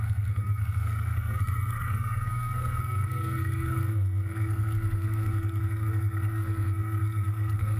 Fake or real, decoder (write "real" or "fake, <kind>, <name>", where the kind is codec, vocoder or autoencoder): fake, codec, SNAC